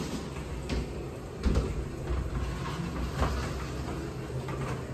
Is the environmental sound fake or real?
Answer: real